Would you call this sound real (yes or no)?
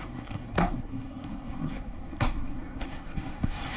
no